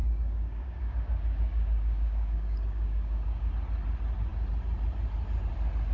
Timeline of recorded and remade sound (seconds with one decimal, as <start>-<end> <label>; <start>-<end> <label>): 0.0-3.5 remade; 3.5-5.9 recorded